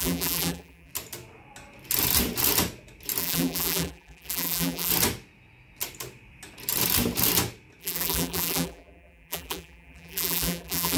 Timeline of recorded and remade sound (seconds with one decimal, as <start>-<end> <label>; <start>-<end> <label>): 0.0-0.9 remade; 0.9-3.2 recorded; 3.2-4.9 remade; 4.9-7.8 recorded; 7.8-11.0 remade